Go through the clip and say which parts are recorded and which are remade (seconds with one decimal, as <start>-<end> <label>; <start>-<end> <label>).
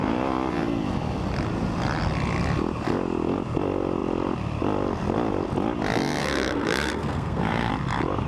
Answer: 0.0-6.2 recorded; 6.2-7.7 remade; 7.7-8.3 recorded